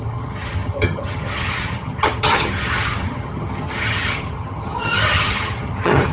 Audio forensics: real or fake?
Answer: fake